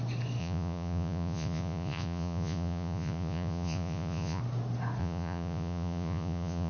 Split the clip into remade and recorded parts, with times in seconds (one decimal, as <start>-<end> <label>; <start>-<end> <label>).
0.0-0.4 recorded; 0.4-4.4 remade; 4.4-5.0 recorded; 5.0-6.7 remade